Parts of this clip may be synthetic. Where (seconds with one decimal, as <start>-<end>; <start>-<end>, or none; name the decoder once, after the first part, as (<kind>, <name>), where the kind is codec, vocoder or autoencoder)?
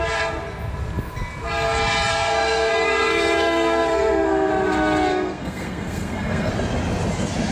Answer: 2.1-4.5 (codec, SNAC); 5.1-6.5